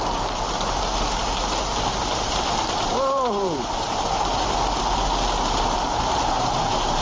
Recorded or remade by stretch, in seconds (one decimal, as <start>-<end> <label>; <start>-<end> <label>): 0.0-2.9 recorded; 2.9-4.5 remade; 4.5-7.0 recorded